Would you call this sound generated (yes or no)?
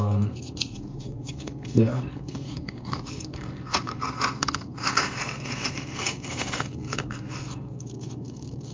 yes